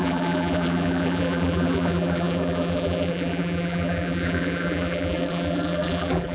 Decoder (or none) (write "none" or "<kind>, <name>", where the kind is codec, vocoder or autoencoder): vocoder, BigVGAN v2